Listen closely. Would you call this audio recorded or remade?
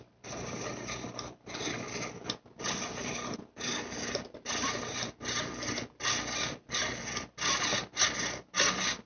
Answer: recorded